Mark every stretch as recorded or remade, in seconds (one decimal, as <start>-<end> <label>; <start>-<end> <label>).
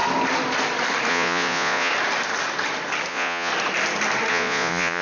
0.0-1.1 recorded; 1.1-1.9 remade; 1.9-3.1 recorded; 3.1-3.5 remade; 3.5-4.3 recorded; 4.3-5.0 remade